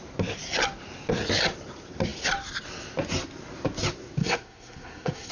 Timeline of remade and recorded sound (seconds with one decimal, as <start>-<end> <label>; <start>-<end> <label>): 0.0-4.2 recorded; 4.2-5.3 remade

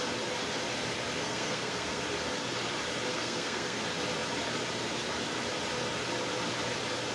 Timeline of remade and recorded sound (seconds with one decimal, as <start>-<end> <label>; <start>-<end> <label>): 0.0-1.2 recorded; 1.2-2.0 remade; 2.0-3.1 recorded; 3.1-3.8 remade; 3.8-7.1 recorded

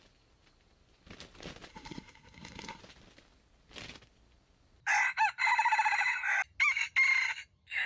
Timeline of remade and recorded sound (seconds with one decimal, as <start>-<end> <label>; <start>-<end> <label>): 0.0-1.7 recorded; 1.7-2.8 remade; 2.8-7.9 recorded

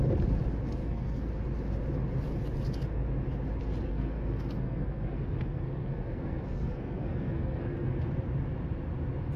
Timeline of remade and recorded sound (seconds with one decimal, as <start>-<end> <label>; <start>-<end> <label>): 0.0-0.8 recorded; 0.8-1.3 remade; 1.3-3.9 recorded; 3.9-8.1 remade; 8.1-9.4 recorded

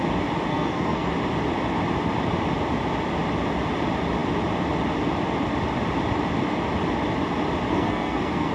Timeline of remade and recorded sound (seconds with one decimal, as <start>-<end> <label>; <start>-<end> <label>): 0.0-0.5 recorded; 0.5-1.1 remade; 1.1-7.7 recorded; 7.7-8.5 remade

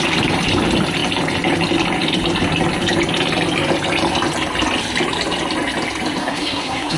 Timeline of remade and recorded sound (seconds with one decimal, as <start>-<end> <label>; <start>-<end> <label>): 0.0-6.2 recorded; 6.2-7.0 remade

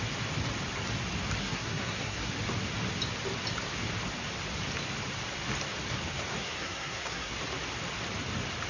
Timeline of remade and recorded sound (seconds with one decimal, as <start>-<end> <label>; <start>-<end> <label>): 0.0-1.4 recorded; 1.4-2.3 remade; 2.3-6.3 recorded; 6.3-7.3 remade; 7.3-8.7 recorded

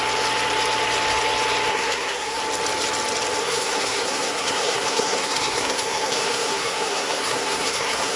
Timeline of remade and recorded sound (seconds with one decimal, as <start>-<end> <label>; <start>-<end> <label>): 0.0-1.7 recorded; 1.7-2.4 remade; 2.4-3.4 recorded; 3.4-8.2 remade